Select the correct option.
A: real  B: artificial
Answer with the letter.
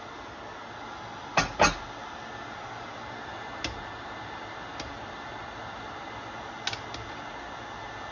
A